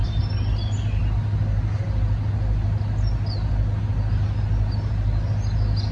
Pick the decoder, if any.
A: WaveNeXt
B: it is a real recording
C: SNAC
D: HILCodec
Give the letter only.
B